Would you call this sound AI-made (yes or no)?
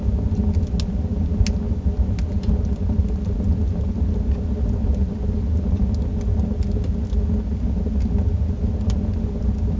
no